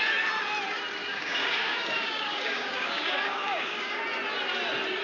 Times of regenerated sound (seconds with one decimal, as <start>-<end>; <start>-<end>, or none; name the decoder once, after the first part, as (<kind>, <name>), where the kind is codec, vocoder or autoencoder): 1.0-4.0 (codec, DAC)